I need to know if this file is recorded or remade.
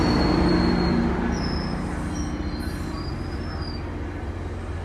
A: recorded